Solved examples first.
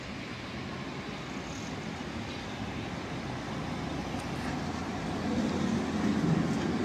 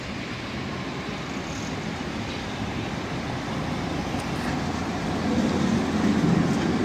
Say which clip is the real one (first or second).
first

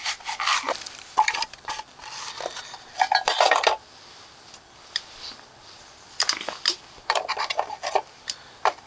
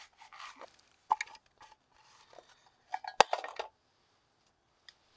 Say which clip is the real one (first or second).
second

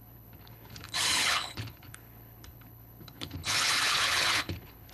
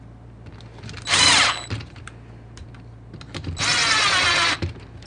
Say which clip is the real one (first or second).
second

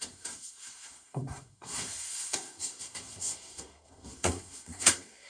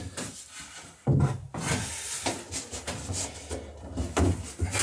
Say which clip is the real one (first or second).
second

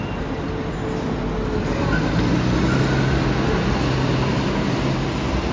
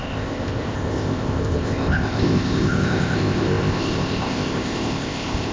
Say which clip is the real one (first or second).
first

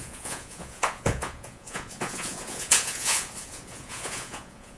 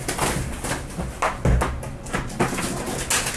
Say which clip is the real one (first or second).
second